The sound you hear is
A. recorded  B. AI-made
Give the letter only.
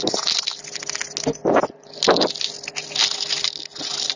A